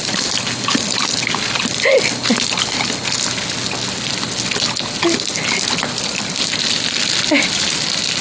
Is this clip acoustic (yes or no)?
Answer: yes